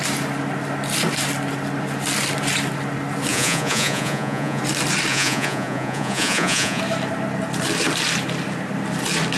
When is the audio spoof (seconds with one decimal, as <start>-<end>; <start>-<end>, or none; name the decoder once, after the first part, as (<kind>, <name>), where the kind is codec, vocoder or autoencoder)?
3.3-4.6 (vocoder, Vocos); 5.1-6.8